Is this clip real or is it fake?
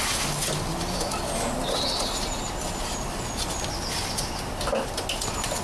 real